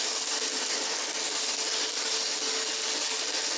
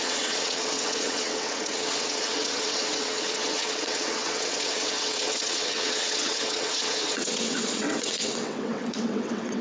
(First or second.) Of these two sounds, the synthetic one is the second